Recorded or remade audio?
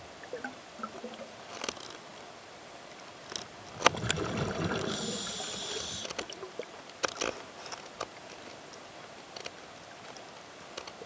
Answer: recorded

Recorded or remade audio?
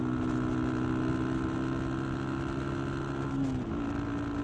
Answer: recorded